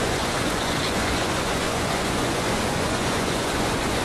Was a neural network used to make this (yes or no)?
yes